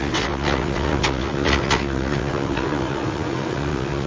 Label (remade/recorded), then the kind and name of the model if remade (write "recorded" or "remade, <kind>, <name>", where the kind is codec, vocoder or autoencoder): remade, vocoder, WaveNeXt